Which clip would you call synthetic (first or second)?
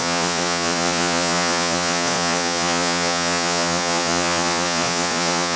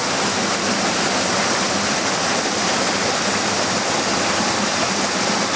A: first